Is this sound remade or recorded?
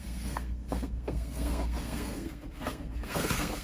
remade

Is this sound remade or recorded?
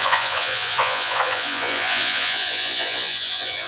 remade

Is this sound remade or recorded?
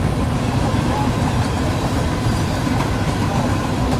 remade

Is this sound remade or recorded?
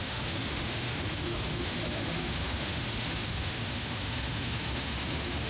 remade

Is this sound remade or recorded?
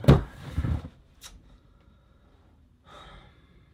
remade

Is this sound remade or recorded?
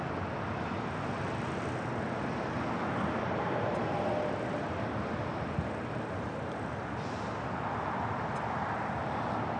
recorded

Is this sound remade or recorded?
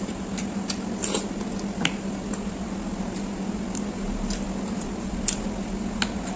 recorded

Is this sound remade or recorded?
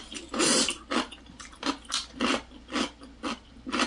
recorded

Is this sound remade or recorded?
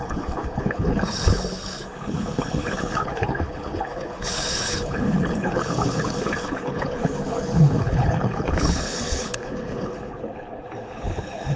remade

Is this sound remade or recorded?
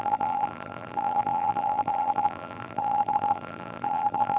remade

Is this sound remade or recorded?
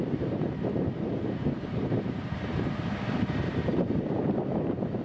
remade